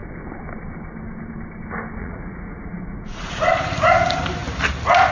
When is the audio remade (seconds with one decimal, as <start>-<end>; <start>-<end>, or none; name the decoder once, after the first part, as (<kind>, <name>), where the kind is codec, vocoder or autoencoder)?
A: 2.0-3.5 (vocoder, Vocos)